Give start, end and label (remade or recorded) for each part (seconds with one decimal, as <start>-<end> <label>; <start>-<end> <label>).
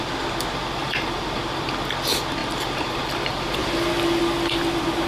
0.0-0.8 recorded; 0.8-1.4 remade; 1.4-2.4 recorded; 2.4-3.2 remade; 3.2-5.1 recorded